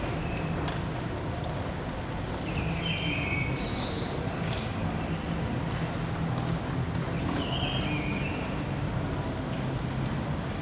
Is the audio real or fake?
real